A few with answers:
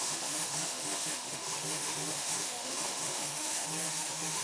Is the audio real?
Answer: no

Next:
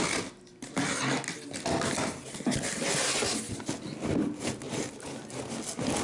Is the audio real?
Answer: yes